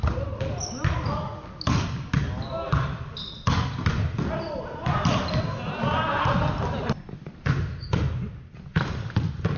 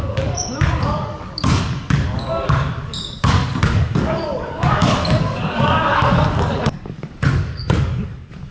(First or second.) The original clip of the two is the first